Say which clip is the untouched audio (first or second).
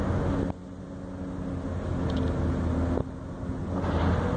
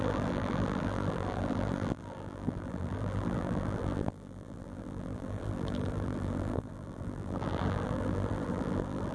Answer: first